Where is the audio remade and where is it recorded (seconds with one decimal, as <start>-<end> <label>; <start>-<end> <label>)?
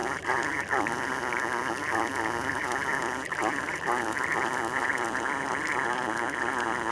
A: 0.0-6.9 remade